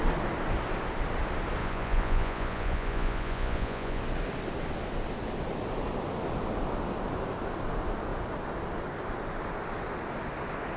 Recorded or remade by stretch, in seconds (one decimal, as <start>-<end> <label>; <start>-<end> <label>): 0.0-1.6 recorded; 1.6-4.0 remade; 4.0-10.8 recorded